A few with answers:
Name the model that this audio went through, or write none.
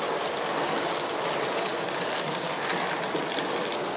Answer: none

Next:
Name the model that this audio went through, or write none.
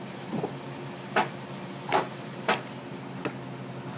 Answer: none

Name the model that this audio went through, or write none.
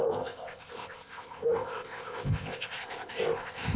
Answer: codec, ZipCodec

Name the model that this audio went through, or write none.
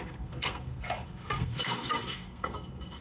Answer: codec, SNAC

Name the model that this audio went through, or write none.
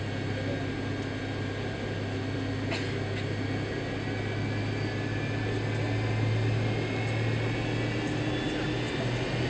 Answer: none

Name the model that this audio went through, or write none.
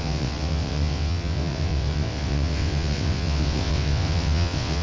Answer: vocoder, WaveNeXt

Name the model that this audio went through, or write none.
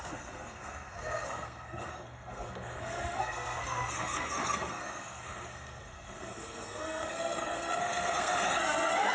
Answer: codec, SNAC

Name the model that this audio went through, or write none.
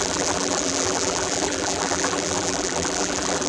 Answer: vocoder, BigVGAN v2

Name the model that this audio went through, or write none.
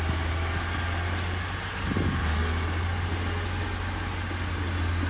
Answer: none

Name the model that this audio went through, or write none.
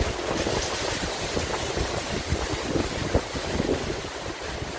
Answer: none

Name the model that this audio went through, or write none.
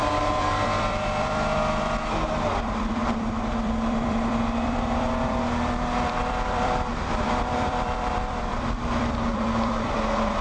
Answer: vocoder, BigVGAN v2